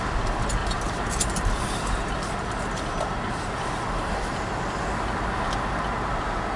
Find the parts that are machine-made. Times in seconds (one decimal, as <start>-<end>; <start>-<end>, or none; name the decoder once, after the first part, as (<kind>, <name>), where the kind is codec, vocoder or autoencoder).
0.6-4.6 (vocoder, BigVGAN v2)